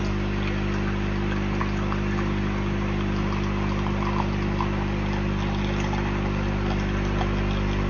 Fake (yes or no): no